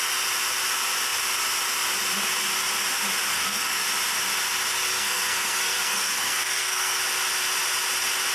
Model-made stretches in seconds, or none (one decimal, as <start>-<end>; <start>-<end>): 3.3-3.8; 4.9-7.0